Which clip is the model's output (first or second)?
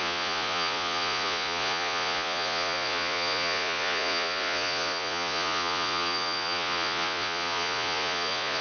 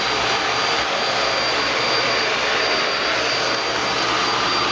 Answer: first